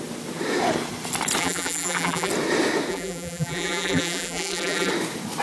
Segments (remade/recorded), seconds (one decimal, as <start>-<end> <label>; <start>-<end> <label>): 0.0-1.4 recorded; 1.4-2.3 remade; 2.3-2.9 recorded; 2.9-4.9 remade; 4.9-5.4 recorded